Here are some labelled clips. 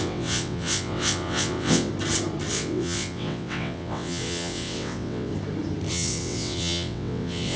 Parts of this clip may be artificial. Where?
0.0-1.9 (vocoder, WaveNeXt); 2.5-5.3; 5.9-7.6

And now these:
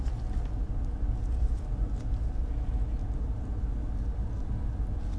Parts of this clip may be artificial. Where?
none

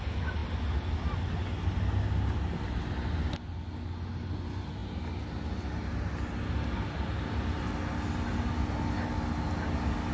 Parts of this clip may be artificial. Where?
none

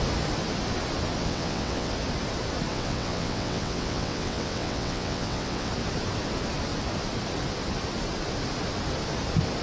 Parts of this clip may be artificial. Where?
1.2-1.9 (vocoder, WaveNeXt); 2.7-5.7

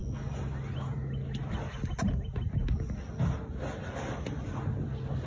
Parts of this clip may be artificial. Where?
none

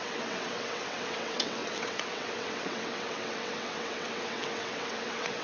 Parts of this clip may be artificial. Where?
0.0-5.4 (vocoder, WaveNeXt)

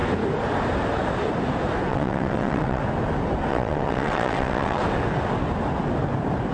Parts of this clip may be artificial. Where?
1.9-2.8 (vocoder, WaveNeXt); 3.5-4.8

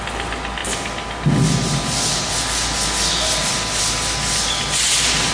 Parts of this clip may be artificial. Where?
none